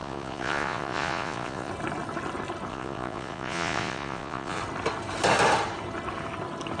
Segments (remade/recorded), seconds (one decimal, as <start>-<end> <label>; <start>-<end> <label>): 0.0-1.7 remade; 1.7-2.7 recorded; 2.7-4.6 remade; 4.6-6.8 recorded